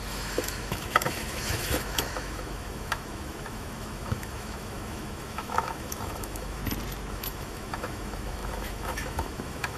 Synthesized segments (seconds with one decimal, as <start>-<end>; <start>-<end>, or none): 0.0-6.6; 7.1-9.8